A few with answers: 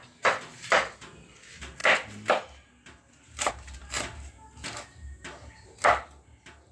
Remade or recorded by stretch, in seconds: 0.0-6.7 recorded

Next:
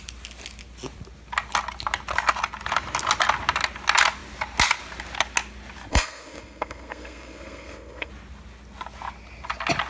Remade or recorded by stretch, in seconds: 0.0-5.9 recorded; 5.9-8.1 remade; 8.1-9.9 recorded

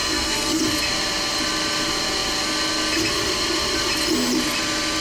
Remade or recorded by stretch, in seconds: 0.0-0.6 remade; 0.6-5.0 recorded

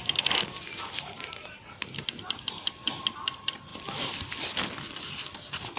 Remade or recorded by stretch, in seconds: 0.0-5.8 recorded

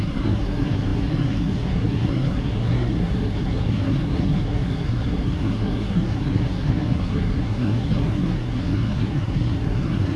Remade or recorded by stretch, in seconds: 0.0-10.2 remade

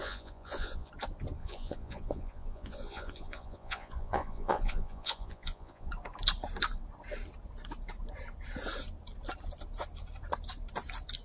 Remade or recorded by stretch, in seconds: 0.0-0.9 remade; 0.9-1.4 recorded; 1.4-5.9 remade; 5.9-11.2 recorded

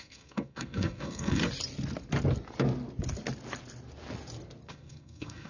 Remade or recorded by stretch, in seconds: 0.0-1.4 remade; 1.4-4.7 recorded; 4.7-5.5 remade